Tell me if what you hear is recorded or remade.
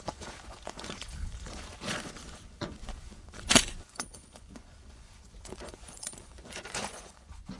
remade